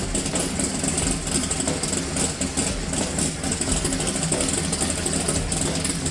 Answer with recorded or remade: recorded